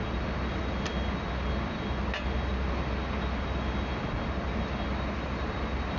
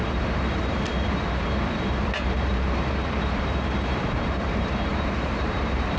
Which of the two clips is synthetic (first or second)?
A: second